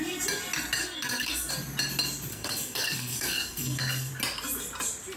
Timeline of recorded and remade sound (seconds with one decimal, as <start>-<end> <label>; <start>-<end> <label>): 0.0-0.8 recorded; 0.8-1.5 remade; 1.5-2.3 recorded; 2.3-4.1 remade; 4.1-5.2 recorded

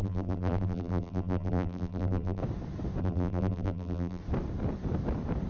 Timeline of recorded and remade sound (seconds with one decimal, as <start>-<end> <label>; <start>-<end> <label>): 0.0-2.4 remade; 2.4-3.0 recorded; 3.0-4.2 remade; 4.2-5.5 recorded

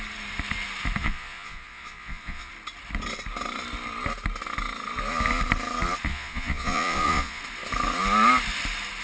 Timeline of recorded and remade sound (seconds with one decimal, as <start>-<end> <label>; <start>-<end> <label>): 0.0-1.0 recorded; 1.0-2.5 remade; 2.5-6.1 recorded; 6.1-7.4 remade; 7.4-9.0 recorded